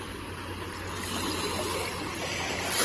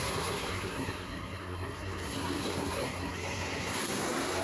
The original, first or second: first